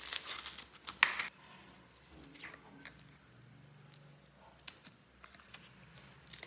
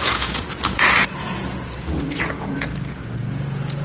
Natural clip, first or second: first